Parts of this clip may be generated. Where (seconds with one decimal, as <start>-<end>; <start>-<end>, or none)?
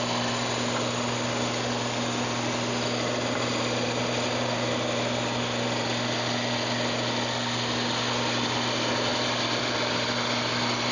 none